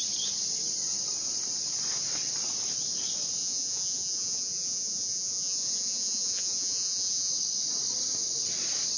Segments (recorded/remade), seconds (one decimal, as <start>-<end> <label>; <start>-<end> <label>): 0.0-3.4 recorded; 3.4-7.3 remade; 7.3-9.0 recorded